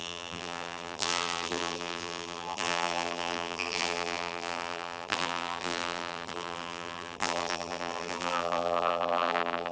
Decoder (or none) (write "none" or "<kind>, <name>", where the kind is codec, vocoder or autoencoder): vocoder, BigVGAN v2